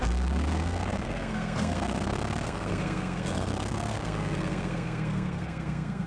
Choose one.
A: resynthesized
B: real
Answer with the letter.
A